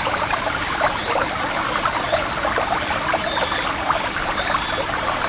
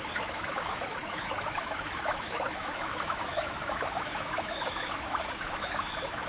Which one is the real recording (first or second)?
first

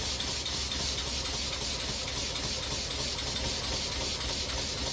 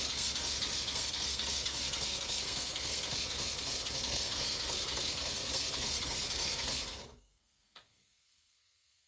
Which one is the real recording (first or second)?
first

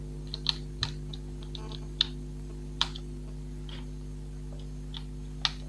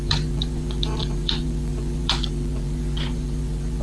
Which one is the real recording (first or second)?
first